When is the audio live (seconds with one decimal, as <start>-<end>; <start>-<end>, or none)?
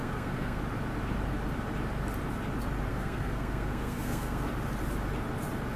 0.6-2.9; 4.5-5.8